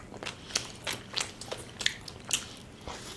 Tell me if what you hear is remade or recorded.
recorded